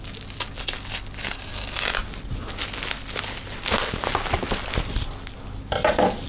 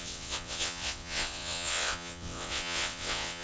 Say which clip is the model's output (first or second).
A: second